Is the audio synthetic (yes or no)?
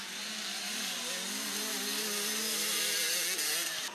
no